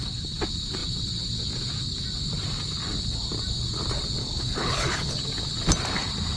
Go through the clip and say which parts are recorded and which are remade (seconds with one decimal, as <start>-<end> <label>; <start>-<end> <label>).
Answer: 0.0-4.2 recorded; 4.2-5.2 remade; 5.2-6.4 recorded